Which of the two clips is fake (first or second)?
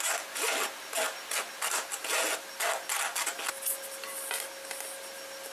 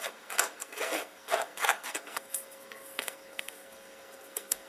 second